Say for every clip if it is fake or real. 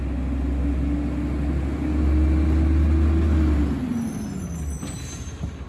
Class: real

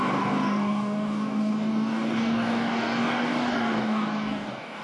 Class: fake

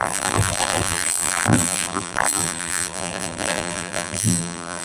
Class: fake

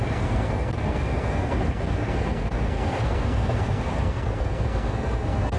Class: fake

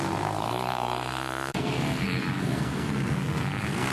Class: fake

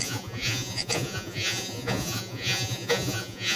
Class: fake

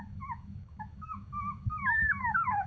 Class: fake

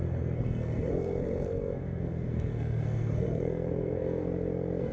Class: fake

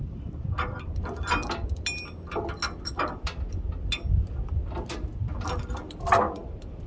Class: real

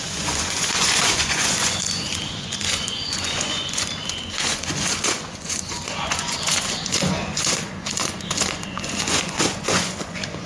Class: fake